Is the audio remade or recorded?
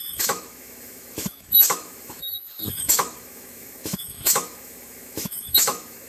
remade